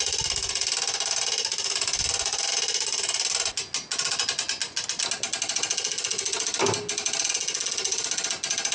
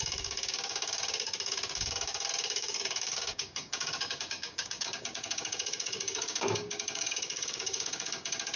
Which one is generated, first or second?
second